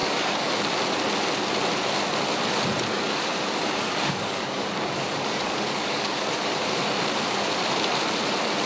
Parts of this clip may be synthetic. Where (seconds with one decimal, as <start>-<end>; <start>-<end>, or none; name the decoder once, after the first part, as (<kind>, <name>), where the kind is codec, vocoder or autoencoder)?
0.0-0.5 (codec, DAC); 2.9-7.2